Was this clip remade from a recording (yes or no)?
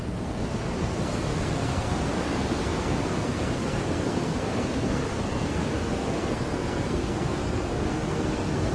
yes